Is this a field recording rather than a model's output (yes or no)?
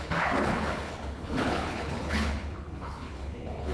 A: no